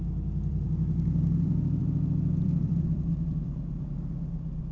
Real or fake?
fake